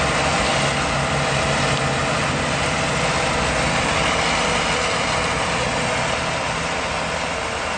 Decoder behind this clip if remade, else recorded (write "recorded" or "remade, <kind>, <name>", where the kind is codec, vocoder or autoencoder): recorded